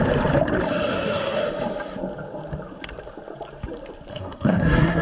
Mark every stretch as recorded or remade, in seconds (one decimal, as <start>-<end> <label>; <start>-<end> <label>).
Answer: 0.0-0.9 recorded; 0.9-1.4 remade; 1.4-4.1 recorded; 4.1-5.0 remade